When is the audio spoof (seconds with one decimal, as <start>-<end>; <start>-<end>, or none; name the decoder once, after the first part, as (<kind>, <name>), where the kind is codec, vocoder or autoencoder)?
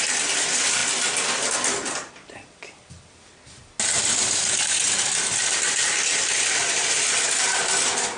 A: none